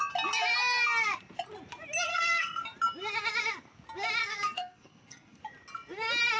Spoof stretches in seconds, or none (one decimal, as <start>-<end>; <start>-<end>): 2.1-2.6; 4.2-5.4